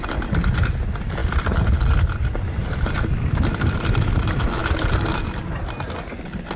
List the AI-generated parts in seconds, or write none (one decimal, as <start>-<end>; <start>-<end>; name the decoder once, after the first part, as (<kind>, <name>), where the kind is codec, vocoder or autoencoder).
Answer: 4.6-5.4 (vocoder, BigVGAN v2)